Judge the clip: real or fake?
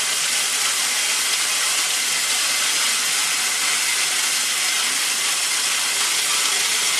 real